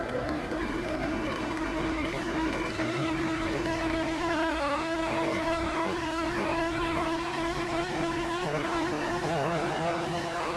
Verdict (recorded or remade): remade